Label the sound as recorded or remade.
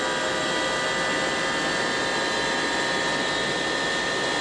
recorded